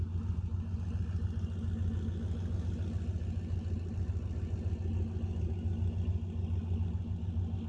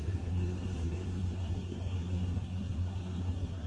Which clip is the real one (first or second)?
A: first